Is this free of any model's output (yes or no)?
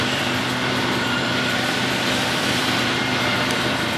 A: no